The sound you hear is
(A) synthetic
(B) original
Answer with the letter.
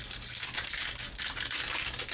B